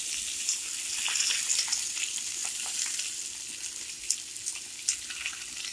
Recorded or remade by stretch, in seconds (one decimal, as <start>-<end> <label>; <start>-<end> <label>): 0.0-5.7 recorded